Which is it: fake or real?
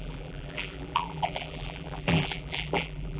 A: fake